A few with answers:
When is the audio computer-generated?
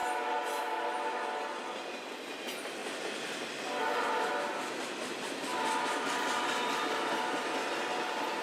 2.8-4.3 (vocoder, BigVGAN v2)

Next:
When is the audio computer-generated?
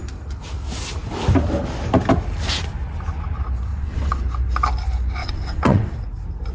3.7-4.2 (vocoder, WaveNeXt); 5.2-6.0